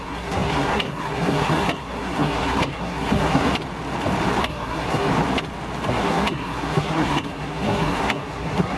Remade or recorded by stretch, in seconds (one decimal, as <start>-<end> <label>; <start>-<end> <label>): 0.0-3.5 remade; 3.5-4.4 recorded; 4.4-5.1 remade; 5.1-5.9 recorded; 5.9-8.8 remade